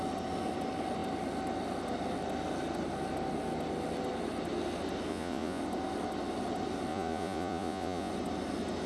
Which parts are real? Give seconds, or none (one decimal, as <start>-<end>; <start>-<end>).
0.0-5.1; 5.6-6.9; 8.1-8.9